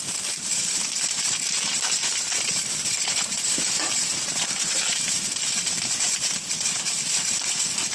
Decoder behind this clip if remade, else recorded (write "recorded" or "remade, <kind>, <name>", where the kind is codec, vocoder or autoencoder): remade, vocoder, BigVGAN v2